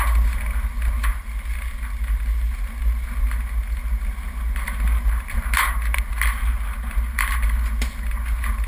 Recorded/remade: recorded